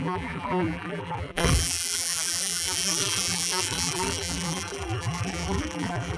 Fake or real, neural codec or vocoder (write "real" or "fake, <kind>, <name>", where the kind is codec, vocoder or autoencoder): fake, vocoder, BigVGAN v2